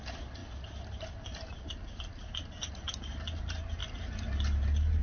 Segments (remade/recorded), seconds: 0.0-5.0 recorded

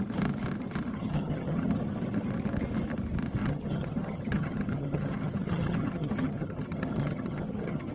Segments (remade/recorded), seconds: 0.0-0.9 recorded; 0.9-1.8 remade; 1.8-3.4 recorded; 3.4-7.9 remade

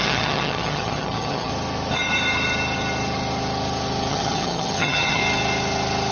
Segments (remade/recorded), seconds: 0.0-1.5 remade; 1.5-4.1 recorded; 4.1-5.2 remade; 5.2-6.1 recorded

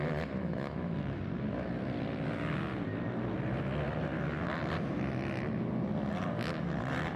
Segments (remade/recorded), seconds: 0.0-0.4 recorded; 0.4-1.2 remade; 1.2-7.2 recorded

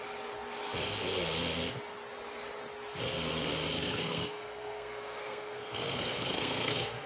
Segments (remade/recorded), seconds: 0.0-3.8 recorded; 3.8-7.1 remade

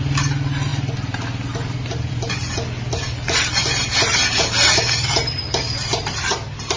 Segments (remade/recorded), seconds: 0.0-6.8 recorded

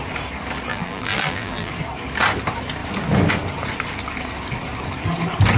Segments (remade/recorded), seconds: 0.0-0.7 recorded; 0.7-1.7 remade; 1.7-5.6 recorded

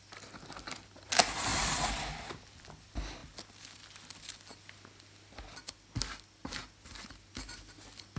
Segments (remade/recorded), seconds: 0.0-8.2 recorded